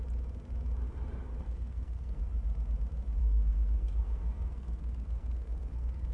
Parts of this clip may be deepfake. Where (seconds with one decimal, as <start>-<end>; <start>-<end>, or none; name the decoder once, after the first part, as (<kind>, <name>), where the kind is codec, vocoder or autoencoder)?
1.4-2.2 (codec, SNAC); 3.2-6.1